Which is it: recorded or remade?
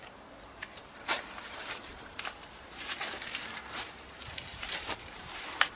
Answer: remade